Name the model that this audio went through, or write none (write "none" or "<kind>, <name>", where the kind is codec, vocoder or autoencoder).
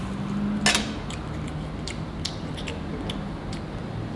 none